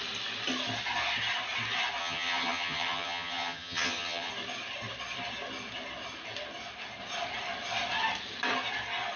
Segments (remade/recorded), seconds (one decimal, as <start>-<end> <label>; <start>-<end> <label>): 0.0-2.0 recorded; 2.0-4.3 remade; 4.3-9.2 recorded